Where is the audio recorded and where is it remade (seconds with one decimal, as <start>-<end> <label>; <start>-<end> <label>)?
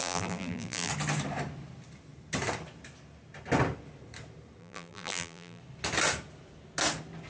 0.0-0.9 remade; 0.9-4.6 recorded; 4.6-5.6 remade; 5.6-7.3 recorded